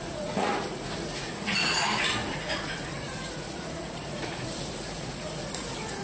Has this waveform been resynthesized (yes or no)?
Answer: yes